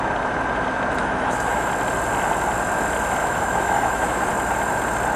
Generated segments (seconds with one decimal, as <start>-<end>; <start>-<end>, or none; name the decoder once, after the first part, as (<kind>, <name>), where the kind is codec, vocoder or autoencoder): 1.0-1.7 (autoencoder, DAC-VAE); 3.2-4.3

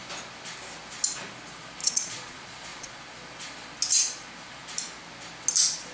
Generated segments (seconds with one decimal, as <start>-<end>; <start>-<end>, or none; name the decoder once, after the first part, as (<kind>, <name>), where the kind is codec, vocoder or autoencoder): 1.8-3.0 (vocoder, Vocos)

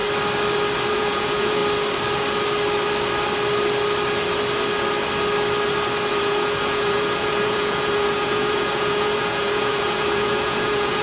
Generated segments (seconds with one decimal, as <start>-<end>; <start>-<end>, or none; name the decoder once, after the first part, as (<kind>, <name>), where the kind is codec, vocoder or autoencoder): 0.9-1.6 (vocoder, Vocos); 6.1-11.0